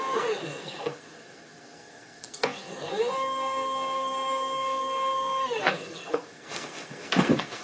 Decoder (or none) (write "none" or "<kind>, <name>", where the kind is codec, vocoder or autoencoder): codec, SNAC